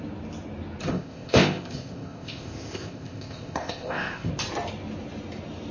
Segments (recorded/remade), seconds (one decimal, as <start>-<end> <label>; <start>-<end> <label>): 0.0-0.9 recorded; 0.9-4.3 remade; 4.3-5.7 recorded